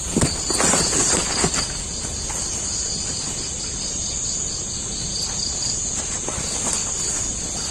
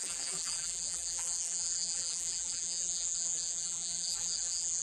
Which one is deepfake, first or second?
second